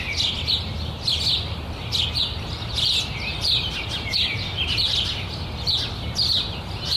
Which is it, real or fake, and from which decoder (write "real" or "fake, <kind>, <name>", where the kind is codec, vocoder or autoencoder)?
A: real